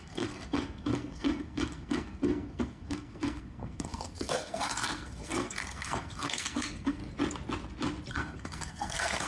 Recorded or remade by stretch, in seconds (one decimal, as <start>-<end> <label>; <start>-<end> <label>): 0.0-7.0 remade; 7.0-8.1 recorded; 8.1-9.3 remade